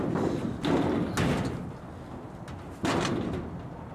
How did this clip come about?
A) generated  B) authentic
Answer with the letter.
B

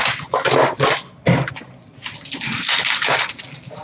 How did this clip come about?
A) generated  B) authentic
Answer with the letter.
B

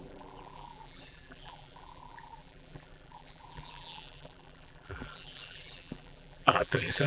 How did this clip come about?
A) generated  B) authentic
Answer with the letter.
A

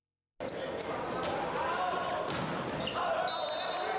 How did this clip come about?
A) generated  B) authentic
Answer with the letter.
B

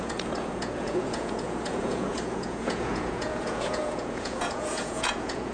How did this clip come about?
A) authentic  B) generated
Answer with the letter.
B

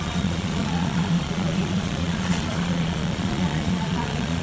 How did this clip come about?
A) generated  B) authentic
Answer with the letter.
A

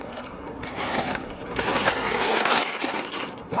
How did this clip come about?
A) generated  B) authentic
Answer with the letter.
A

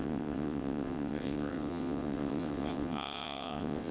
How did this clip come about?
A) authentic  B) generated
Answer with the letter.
B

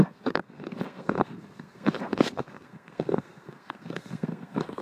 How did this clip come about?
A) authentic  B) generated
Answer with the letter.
B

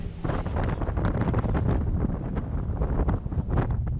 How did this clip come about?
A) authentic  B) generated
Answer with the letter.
A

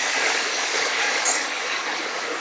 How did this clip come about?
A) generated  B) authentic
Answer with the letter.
A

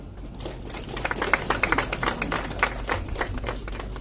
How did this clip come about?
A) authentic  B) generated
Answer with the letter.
A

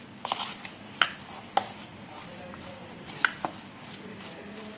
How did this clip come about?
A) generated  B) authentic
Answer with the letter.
B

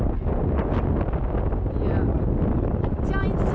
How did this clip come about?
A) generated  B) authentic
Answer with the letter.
B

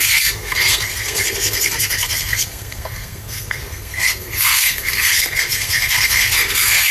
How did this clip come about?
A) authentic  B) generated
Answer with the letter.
B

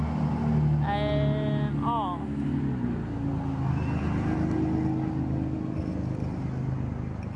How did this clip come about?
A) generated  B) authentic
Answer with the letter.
B